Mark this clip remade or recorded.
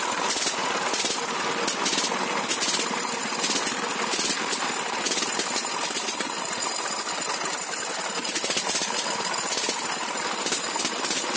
recorded